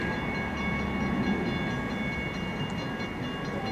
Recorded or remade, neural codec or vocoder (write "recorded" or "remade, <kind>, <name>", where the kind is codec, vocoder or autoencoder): recorded